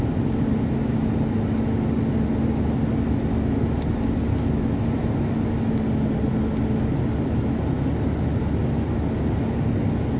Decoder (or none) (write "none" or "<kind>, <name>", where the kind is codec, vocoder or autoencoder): none